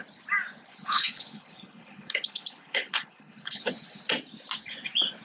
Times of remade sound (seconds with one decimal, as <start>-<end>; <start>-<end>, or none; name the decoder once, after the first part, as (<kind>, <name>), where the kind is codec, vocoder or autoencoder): 0.7-3.7 (codec, HILCodec)